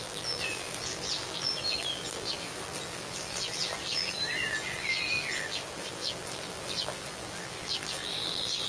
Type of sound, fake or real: fake